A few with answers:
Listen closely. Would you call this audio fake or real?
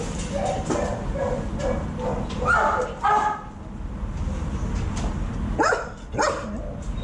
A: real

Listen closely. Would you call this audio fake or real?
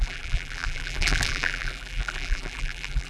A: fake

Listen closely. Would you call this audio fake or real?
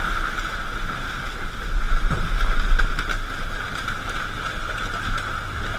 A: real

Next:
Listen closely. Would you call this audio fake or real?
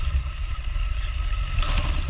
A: fake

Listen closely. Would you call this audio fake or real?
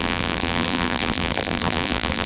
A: fake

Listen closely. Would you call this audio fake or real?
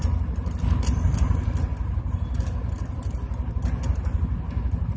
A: real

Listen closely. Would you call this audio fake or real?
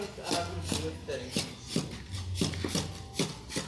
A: real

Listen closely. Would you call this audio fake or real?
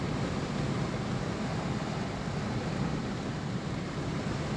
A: fake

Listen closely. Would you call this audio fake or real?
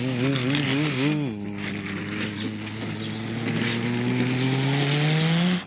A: real